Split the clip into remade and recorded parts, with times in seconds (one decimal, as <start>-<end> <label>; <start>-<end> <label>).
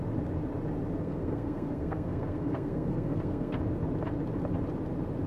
0.0-1.0 recorded; 1.0-3.6 remade; 3.6-5.3 recorded